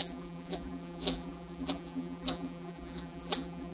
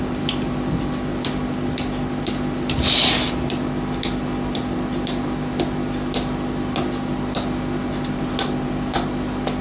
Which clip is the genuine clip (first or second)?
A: second